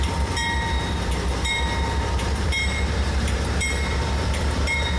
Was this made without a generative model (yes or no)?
no